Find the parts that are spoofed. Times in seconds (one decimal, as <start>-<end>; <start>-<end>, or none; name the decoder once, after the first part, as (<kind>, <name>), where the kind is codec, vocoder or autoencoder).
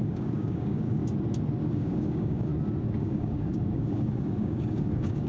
0.0-1.0 (codec, DAC); 1.7-2.5; 3.0-5.3